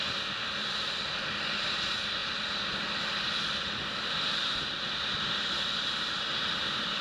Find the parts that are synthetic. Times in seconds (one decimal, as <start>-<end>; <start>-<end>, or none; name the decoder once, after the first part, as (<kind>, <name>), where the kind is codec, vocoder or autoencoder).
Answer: 0.0-2.2 (vocoder, BigVGAN v2); 6.4-7.0